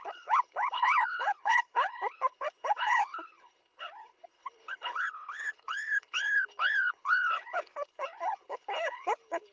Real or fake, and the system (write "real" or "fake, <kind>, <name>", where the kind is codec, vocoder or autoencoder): fake, codec, HILCodec